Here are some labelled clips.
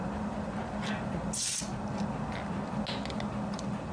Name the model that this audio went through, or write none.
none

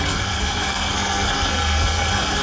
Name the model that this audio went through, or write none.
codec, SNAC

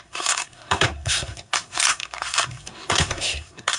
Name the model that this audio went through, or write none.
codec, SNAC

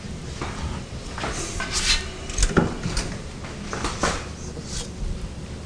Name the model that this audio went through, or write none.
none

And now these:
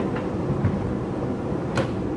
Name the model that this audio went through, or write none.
none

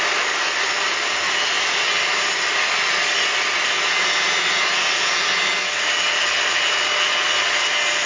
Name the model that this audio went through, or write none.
none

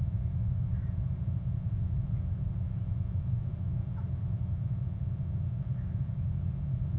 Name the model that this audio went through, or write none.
none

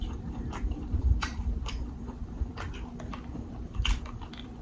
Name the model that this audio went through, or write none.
vocoder, BigVGAN v2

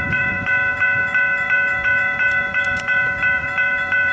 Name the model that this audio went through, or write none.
vocoder, Vocos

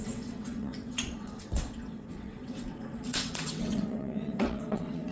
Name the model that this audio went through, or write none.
vocoder, WaveNeXt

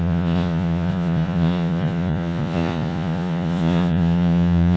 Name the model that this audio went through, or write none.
vocoder, Vocos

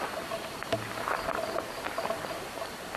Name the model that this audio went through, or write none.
none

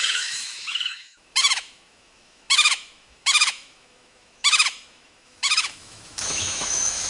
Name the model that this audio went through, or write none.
autoencoder, DAC-VAE